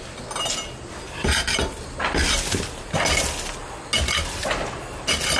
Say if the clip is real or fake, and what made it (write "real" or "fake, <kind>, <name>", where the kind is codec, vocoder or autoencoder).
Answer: real